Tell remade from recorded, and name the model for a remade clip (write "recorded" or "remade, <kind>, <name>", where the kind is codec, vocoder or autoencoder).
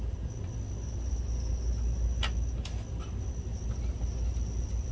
recorded